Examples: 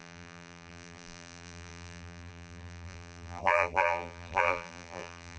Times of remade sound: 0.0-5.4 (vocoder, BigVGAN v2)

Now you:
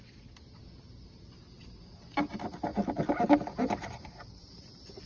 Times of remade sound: none

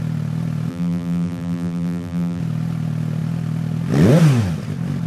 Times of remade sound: 0.7-2.4 (vocoder, BigVGAN v2)

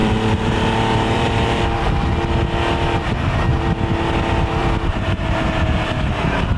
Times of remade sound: 0.0-2.2 (vocoder, BigVGAN v2); 4.6-5.4

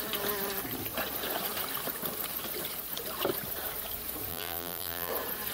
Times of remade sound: 4.3-5.1 (vocoder, BigVGAN v2)

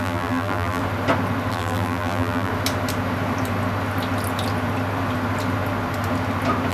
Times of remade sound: 0.0-0.8 (vocoder, BigVGAN v2); 1.5-2.5